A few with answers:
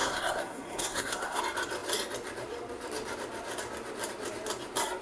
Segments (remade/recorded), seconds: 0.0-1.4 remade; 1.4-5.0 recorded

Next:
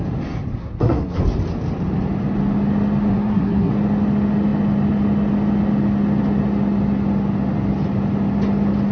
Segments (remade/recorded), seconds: 0.0-0.6 recorded; 0.6-1.2 remade; 1.2-3.1 recorded; 3.1-3.7 remade; 3.7-8.9 recorded

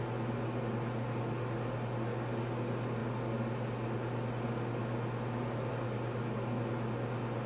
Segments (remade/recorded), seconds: 0.0-7.5 recorded